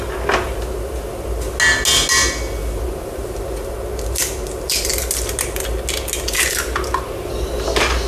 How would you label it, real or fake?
real